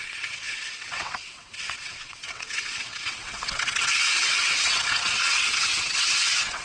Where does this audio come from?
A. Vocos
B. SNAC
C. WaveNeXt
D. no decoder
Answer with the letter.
C